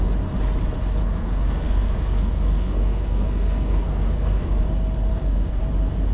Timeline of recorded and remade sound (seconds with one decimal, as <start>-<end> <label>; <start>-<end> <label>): 0.0-1.0 recorded; 1.0-4.6 remade; 4.6-5.1 recorded; 5.1-5.6 remade; 5.6-6.1 recorded